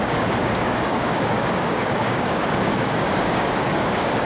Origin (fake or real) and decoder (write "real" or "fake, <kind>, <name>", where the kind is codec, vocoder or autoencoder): fake, codec, DAC